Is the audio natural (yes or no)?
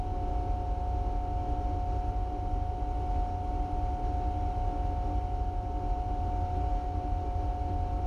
yes